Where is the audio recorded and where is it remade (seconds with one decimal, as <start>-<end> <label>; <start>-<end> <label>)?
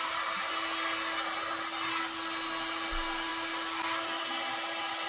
0.0-5.1 recorded